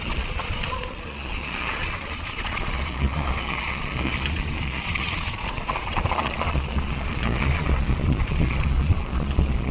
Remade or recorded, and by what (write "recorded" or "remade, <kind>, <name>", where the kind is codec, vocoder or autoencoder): remade, vocoder, Vocos